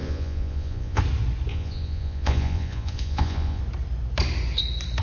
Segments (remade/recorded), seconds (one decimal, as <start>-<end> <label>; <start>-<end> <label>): 0.0-1.0 remade; 1.0-1.5 recorded; 1.5-3.6 remade; 3.6-5.0 recorded

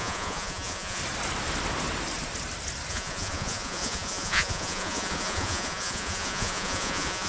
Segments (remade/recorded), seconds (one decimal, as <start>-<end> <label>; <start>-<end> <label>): 0.0-1.0 remade; 1.0-2.9 recorded; 2.9-7.3 remade

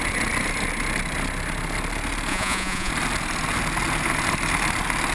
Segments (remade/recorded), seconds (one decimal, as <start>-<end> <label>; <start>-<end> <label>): 0.0-2.3 recorded; 2.3-2.9 remade; 2.9-5.1 recorded

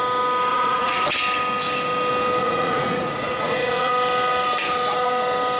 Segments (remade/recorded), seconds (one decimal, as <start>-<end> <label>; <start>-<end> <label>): 0.0-0.5 recorded; 0.5-1.2 remade; 1.2-2.4 recorded; 2.4-3.9 remade; 3.9-5.6 recorded

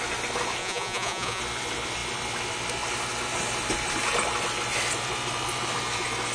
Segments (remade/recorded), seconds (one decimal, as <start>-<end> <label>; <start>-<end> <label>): 0.0-0.6 recorded; 0.6-1.4 remade; 1.4-6.3 recorded

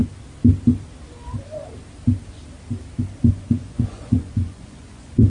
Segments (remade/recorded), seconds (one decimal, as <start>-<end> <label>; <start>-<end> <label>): 0.0-3.2 recorded; 3.2-5.3 remade